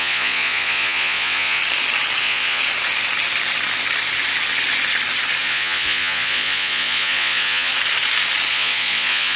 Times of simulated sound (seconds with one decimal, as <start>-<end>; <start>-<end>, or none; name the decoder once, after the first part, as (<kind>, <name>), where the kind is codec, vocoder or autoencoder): 0.0-1.6 (vocoder, Vocos); 2.2-2.6; 5.4-7.7; 8.5-9.4